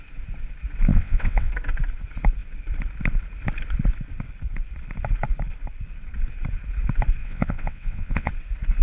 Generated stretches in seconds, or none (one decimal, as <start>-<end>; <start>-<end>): 0.9-1.5; 7.2-8.3